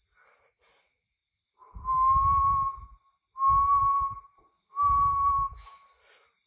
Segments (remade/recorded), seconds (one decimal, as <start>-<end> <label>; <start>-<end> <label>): 0.0-6.5 recorded